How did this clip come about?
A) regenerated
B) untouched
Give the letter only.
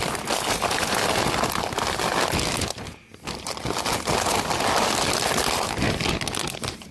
B